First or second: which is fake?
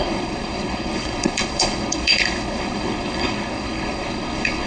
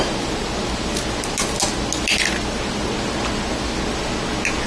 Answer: first